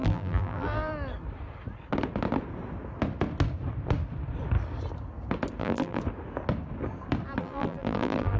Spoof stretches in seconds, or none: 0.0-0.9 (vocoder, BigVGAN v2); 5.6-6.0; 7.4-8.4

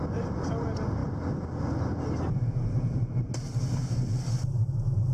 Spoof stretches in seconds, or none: none

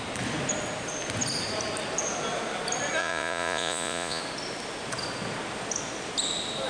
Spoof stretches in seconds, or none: 3.0-4.2 (vocoder, Vocos)

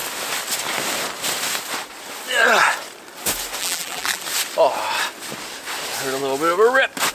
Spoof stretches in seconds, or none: 3.6-4.2 (vocoder, BigVGAN v2)

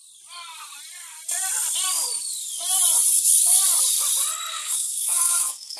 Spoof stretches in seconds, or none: 4.5-5.8 (codec, SNAC)

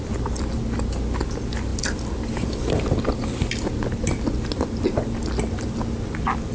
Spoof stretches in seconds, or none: none